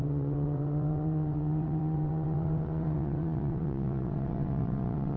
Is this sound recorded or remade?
remade